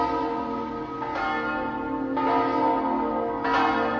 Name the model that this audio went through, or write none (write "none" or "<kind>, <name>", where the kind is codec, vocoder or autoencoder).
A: none